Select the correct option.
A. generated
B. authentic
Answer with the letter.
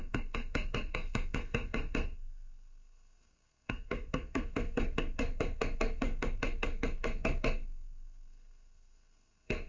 A